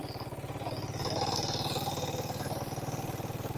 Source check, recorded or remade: recorded